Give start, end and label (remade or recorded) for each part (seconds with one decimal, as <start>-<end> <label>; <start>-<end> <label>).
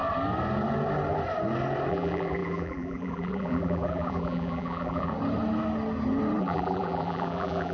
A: 0.0-1.9 recorded; 1.9-5.1 remade; 5.1-6.4 recorded; 6.4-7.7 remade